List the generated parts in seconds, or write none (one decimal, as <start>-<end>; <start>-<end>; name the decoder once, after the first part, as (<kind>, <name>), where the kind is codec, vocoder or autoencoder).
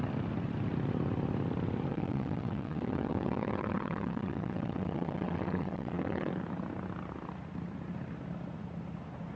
1.9-6.3 (vocoder, WaveNeXt)